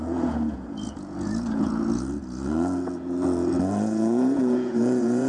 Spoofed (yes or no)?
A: yes